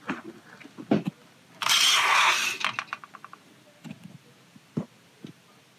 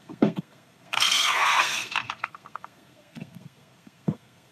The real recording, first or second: first